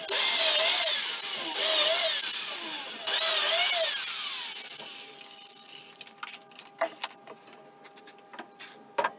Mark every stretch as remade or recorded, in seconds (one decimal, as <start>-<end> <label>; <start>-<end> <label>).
0.0-9.2 recorded